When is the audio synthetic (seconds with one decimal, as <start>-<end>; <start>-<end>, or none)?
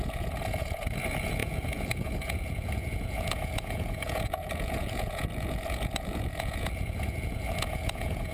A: 0.0-8.3